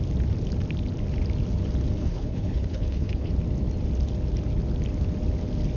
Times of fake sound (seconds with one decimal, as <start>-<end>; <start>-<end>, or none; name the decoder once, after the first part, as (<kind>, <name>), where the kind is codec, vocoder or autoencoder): 2.0-3.3 (codec, HILCodec)